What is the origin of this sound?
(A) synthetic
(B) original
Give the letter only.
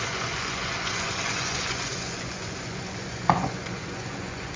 A